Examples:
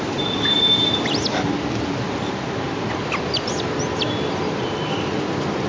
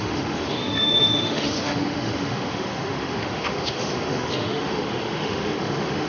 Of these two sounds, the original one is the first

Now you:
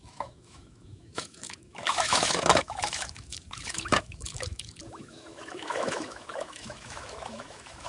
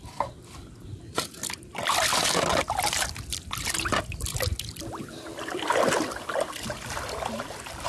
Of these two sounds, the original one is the second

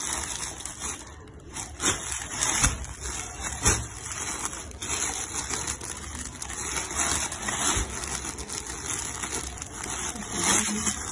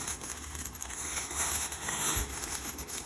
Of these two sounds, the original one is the first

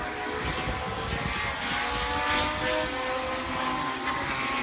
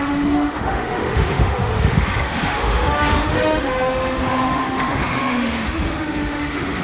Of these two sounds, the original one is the first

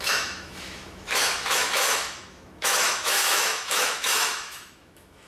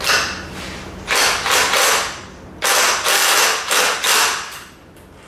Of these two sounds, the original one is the second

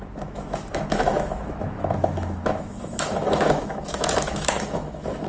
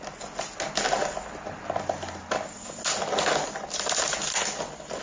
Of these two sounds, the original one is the second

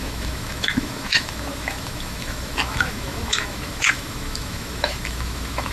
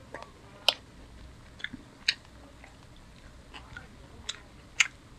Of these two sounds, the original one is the second